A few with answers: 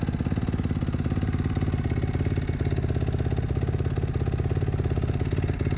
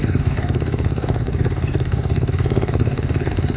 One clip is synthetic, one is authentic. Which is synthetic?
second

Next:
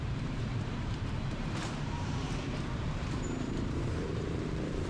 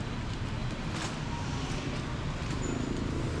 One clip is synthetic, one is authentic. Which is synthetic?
first